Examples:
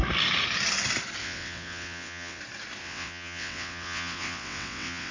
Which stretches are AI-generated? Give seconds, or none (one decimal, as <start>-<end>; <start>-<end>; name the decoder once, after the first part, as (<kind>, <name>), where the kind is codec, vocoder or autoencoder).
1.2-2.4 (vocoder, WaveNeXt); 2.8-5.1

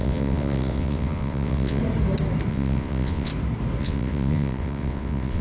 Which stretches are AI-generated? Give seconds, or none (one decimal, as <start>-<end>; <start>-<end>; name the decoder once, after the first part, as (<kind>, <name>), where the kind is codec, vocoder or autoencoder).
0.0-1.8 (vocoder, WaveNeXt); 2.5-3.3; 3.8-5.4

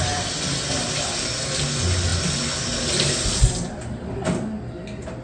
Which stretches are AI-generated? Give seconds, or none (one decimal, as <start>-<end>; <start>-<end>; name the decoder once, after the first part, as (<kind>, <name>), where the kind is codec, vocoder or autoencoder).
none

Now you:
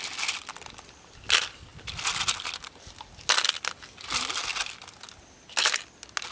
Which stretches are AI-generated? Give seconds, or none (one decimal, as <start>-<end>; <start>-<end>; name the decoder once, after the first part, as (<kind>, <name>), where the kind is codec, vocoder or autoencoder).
none

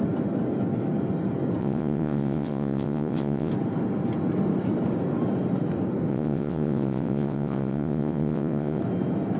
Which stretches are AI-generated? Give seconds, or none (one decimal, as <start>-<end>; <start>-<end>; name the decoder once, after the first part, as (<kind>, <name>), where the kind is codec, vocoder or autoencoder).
1.6-3.5 (vocoder, WaveNeXt); 6.1-8.8

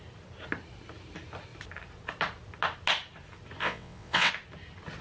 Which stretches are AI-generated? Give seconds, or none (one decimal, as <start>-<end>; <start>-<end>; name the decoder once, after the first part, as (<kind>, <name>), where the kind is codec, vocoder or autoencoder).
3.6-4.3 (vocoder, WaveNeXt)